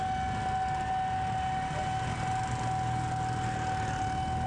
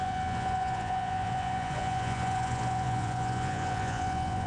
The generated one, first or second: second